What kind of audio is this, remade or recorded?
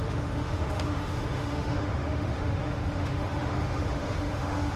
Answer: remade